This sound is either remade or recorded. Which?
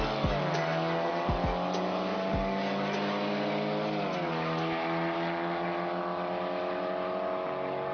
recorded